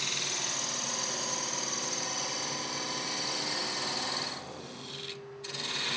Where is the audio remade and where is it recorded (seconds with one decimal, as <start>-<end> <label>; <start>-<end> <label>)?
0.0-6.0 recorded

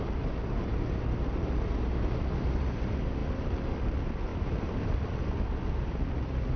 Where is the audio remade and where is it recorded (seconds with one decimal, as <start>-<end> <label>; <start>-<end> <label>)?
0.0-6.6 recorded

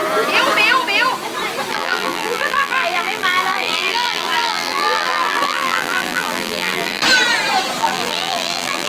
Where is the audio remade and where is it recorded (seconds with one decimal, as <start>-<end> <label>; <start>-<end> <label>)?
0.0-1.7 recorded; 1.7-7.0 remade; 7.0-7.8 recorded; 7.8-8.9 remade

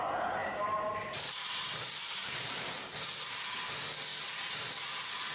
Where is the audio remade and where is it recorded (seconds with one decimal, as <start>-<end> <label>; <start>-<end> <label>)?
0.0-0.4 recorded; 0.4-2.9 remade; 2.9-5.3 recorded

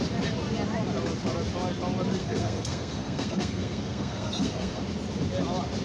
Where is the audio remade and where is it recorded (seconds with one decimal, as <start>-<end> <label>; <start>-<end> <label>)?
0.0-2.2 recorded; 2.2-4.8 remade; 4.8-5.8 recorded

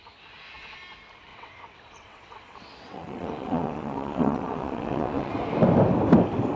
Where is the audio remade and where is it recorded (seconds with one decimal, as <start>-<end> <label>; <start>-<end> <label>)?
0.0-1.3 recorded; 1.3-5.3 remade; 5.3-6.6 recorded